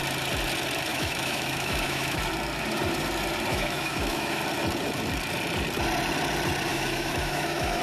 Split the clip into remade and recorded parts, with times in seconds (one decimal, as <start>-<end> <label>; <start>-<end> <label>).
0.0-0.9 recorded; 0.9-2.2 remade; 2.2-3.5 recorded; 3.5-4.4 remade; 4.4-6.7 recorded; 6.7-7.8 remade